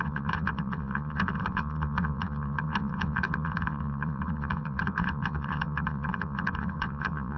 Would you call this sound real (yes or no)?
no